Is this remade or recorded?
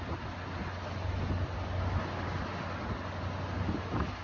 recorded